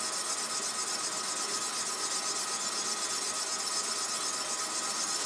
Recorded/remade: recorded